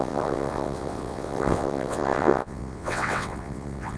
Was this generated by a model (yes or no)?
yes